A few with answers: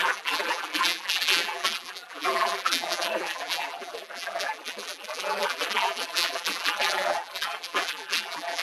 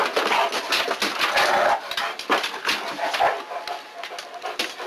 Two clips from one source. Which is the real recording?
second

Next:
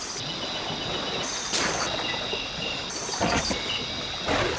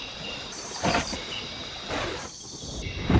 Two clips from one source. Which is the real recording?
first